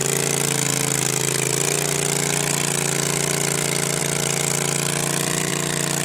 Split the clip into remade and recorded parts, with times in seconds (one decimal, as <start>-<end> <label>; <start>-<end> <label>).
0.0-4.0 recorded; 4.0-5.5 remade; 5.5-6.0 recorded